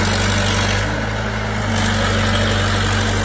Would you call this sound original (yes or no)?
yes